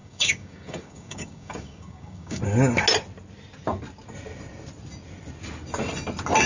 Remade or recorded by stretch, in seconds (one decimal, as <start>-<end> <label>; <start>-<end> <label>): 0.0-2.4 remade; 2.4-6.5 recorded